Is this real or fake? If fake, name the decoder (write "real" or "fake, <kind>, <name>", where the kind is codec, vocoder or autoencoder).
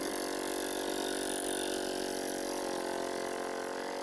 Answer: real